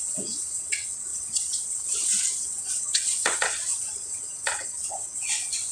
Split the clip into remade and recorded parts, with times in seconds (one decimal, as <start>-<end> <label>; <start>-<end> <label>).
0.0-5.7 remade